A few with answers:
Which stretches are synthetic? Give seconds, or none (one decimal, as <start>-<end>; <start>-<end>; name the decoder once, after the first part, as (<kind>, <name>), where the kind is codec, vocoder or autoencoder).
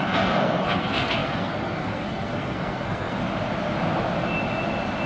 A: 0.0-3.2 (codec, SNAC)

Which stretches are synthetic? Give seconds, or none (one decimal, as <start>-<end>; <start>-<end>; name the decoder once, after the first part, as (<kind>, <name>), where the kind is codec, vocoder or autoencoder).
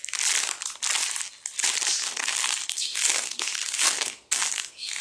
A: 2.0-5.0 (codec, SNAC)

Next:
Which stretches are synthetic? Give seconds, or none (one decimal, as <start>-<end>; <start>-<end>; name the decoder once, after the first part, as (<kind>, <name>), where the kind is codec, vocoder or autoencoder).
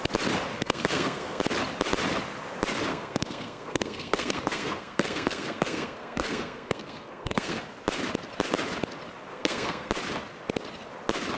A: 0.5-1.4 (codec, SNAC); 2.9-7.6; 9.3-9.9